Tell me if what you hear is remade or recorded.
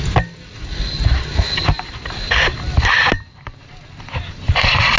recorded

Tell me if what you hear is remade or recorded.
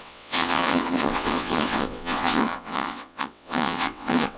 remade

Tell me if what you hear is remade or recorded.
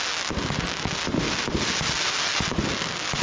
recorded